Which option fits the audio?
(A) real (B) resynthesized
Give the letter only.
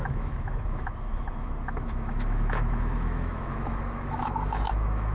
B